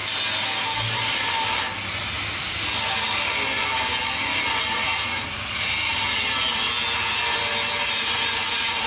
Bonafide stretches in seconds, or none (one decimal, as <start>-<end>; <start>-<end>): 0.0-4.8; 5.7-7.8